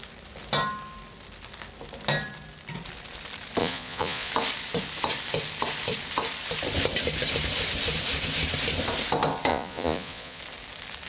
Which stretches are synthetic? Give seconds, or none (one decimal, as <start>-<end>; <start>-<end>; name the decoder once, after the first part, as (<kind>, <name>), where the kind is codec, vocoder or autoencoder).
3.6-4.3 (vocoder, Vocos); 9.5-10.4